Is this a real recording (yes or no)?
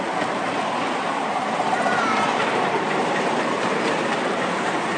no